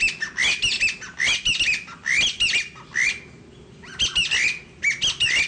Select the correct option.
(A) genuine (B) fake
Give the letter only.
A